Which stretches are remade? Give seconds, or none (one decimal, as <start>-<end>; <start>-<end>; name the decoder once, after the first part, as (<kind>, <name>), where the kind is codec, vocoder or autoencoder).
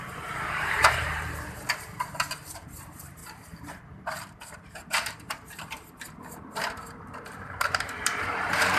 0.0-8.8 (vocoder, BigVGAN v2)